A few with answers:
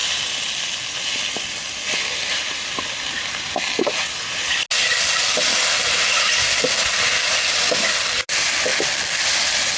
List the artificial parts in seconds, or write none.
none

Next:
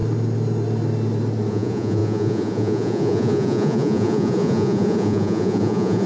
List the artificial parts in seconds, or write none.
1.5-6.1 (vocoder, Vocos)

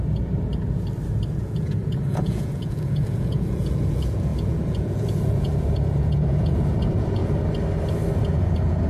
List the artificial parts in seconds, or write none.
0.0-0.5 (vocoder, Vocos); 1.4-7.2; 8.3-8.9

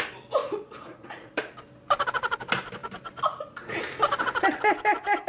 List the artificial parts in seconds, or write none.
0.4-1.4 (vocoder, Vocos)